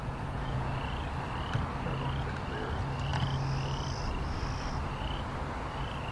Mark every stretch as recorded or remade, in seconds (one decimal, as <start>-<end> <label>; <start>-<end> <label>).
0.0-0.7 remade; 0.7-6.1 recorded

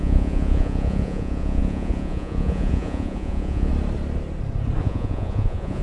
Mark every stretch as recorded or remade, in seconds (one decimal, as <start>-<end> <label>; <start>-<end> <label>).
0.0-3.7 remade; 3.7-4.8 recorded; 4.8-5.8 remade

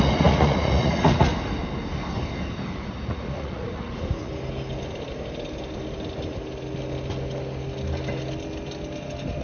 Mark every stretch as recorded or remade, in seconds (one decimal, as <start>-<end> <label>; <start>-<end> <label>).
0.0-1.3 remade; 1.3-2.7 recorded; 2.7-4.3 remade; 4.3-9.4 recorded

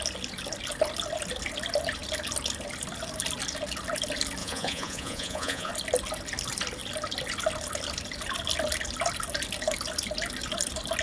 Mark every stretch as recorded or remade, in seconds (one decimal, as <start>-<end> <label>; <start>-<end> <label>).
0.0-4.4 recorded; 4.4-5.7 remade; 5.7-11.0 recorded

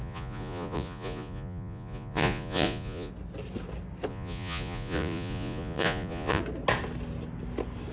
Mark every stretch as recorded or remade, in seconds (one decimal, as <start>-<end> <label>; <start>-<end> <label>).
0.0-3.1 remade; 3.1-4.1 recorded; 4.1-6.4 remade; 6.4-7.9 recorded

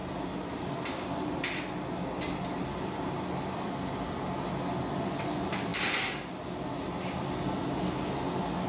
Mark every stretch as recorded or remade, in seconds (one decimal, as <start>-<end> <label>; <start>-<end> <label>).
0.0-8.7 recorded

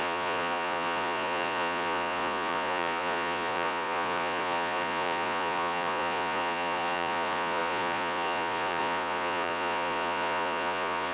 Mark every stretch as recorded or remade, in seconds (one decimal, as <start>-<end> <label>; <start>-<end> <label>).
0.0-11.1 remade

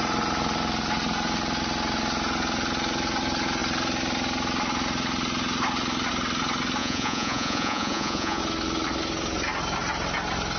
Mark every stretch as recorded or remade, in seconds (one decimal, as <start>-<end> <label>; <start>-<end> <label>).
0.0-6.8 recorded; 6.8-8.4 remade; 8.4-10.6 recorded